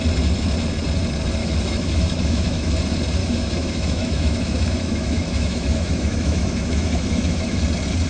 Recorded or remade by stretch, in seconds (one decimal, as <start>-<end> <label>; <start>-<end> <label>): 0.0-1.4 recorded; 1.4-2.7 remade; 2.7-3.2 recorded; 3.2-7.6 remade; 7.6-8.1 recorded